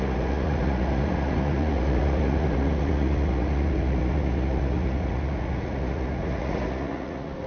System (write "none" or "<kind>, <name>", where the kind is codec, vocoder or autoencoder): vocoder, Vocos